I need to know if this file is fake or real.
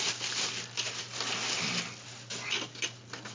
real